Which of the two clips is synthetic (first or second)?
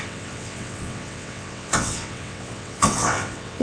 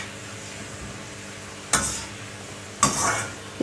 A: first